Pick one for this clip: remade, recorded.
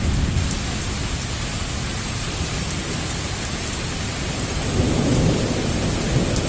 recorded